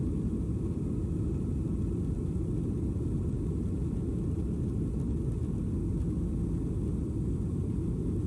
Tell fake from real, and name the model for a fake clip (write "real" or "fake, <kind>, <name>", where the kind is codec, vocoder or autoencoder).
real